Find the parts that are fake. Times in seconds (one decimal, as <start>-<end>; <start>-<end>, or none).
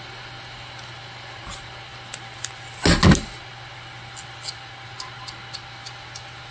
none